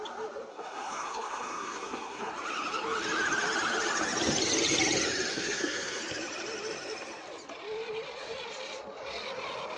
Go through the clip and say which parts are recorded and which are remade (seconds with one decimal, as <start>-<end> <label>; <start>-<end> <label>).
0.0-0.5 recorded; 0.5-2.3 remade; 2.3-5.3 recorded; 5.3-6.0 remade; 6.0-9.8 recorded